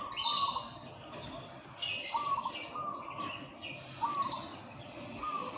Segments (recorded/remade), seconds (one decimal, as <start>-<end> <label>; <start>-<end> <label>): 0.0-5.6 recorded